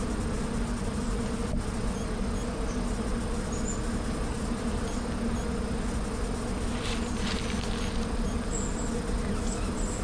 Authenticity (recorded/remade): recorded